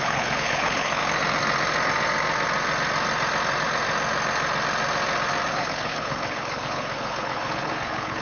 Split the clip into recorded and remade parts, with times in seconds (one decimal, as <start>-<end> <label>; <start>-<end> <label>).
0.0-1.0 remade; 1.0-5.5 recorded; 5.5-8.2 remade

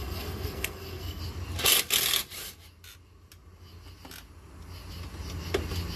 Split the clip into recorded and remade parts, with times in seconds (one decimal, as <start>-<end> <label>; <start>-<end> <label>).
0.0-1.2 remade; 1.2-6.0 recorded

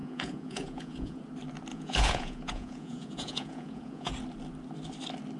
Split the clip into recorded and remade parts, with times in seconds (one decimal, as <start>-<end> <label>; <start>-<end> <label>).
0.0-1.2 remade; 1.2-1.7 recorded; 1.7-4.1 remade; 4.1-5.4 recorded